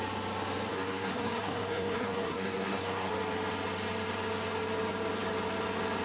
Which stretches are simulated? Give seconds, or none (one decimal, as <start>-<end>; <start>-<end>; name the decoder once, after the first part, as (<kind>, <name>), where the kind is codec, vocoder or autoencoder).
0.7-3.1 (codec, SNAC)